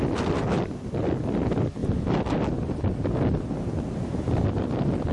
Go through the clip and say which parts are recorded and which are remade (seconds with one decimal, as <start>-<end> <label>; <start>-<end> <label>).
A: 0.0-5.1 recorded